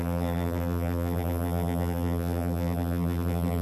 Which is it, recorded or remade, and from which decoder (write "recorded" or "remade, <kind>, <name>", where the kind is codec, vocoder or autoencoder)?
remade, vocoder, BigVGAN v2